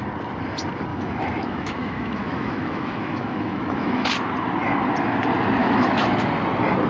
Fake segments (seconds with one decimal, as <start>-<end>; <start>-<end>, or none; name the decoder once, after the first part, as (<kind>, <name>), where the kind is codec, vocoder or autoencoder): 0.9-4.1 (autoencoder, DAC-VAE); 5.6-6.3